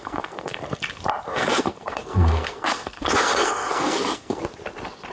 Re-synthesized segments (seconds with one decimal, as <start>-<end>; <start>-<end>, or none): 0.0-0.8; 1.3-4.4